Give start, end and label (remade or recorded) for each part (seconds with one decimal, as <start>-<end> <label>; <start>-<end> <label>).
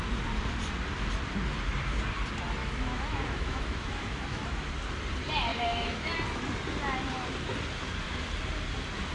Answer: 0.0-2.6 recorded; 2.6-4.7 remade; 4.7-5.5 recorded; 5.5-6.1 remade; 6.1-9.1 recorded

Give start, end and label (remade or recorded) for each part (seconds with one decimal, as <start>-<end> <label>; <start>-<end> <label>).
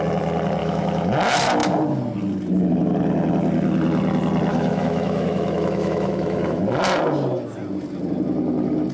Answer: 0.0-0.6 recorded; 0.6-1.1 remade; 1.1-4.5 recorded; 4.5-6.6 remade; 6.6-8.9 recorded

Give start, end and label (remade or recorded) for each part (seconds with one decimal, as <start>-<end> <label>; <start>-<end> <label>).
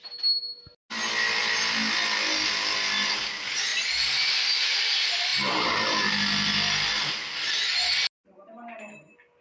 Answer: 0.0-9.4 recorded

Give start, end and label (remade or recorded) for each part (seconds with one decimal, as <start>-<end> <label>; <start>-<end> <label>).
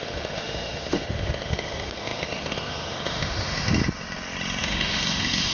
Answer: 0.0-3.8 remade; 3.8-4.6 recorded; 4.6-5.5 remade